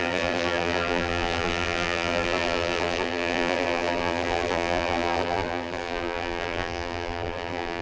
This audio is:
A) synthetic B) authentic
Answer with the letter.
A